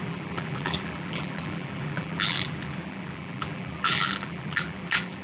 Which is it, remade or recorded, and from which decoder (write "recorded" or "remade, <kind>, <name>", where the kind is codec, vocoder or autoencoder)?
remade, vocoder, BigVGAN v2